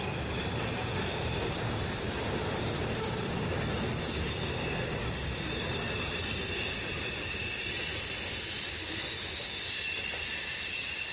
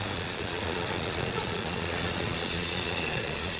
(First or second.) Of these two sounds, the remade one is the second